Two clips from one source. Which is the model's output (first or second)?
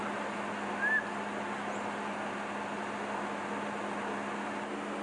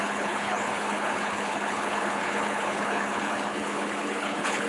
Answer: second